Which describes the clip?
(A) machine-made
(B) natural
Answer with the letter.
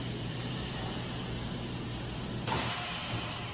A